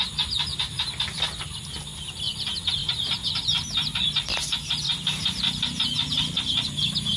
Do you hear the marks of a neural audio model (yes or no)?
no